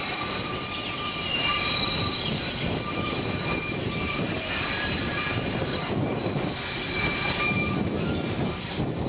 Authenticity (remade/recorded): remade